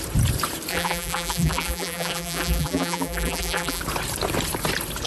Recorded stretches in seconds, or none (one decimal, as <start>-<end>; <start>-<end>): 0.0-0.7; 3.8-5.1